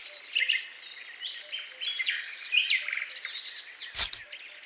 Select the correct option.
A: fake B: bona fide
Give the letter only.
B